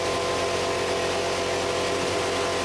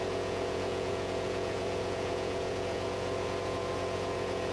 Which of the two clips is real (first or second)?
first